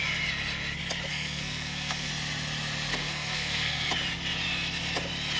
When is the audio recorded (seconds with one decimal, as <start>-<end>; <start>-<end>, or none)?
0.0-1.1; 2.1-2.9; 3.9-5.4